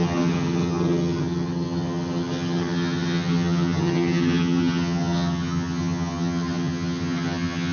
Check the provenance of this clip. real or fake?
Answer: fake